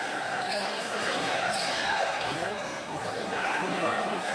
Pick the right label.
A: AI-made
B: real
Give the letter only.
A